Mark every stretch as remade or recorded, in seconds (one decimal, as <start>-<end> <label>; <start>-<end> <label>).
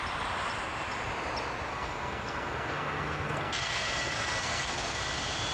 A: 0.0-1.7 recorded; 1.7-5.0 remade; 5.0-5.5 recorded